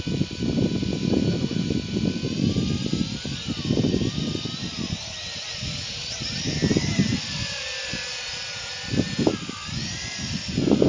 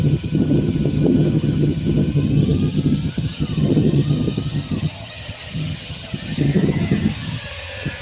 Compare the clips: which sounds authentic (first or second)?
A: first